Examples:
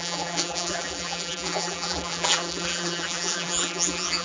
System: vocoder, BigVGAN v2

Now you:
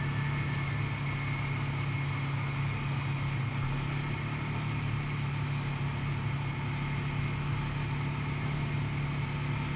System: none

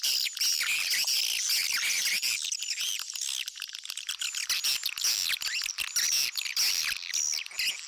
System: none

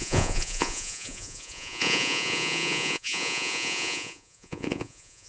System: vocoder, Vocos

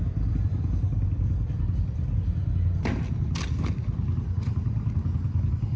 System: none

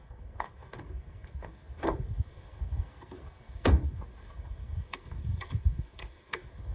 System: codec, SNAC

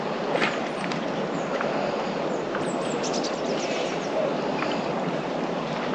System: none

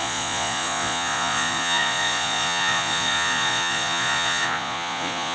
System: vocoder, Vocos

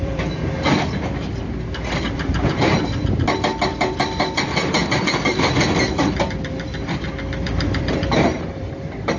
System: vocoder, BigVGAN v2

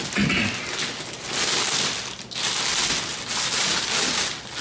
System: none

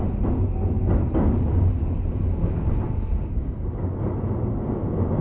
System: none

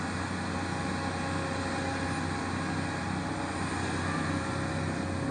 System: none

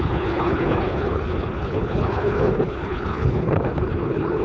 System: codec, HILCodec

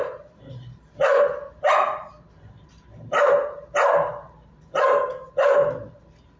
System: vocoder, BigVGAN v2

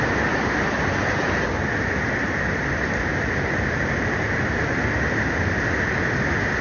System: none